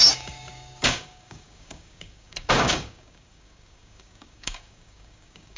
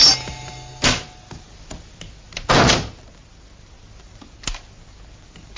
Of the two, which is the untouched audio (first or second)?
second